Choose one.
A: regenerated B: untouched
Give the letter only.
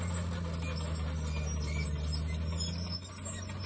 B